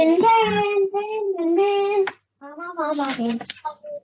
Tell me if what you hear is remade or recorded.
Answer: remade